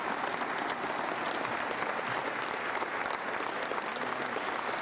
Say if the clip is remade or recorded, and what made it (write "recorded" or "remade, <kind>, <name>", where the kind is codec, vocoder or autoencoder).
recorded